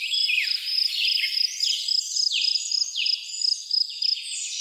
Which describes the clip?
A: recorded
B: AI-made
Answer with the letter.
A